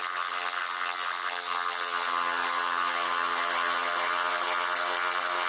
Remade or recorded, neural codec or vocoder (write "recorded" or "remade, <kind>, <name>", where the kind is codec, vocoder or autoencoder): recorded